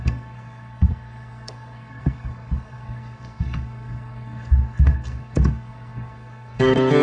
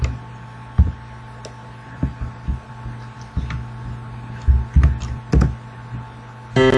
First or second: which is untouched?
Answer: second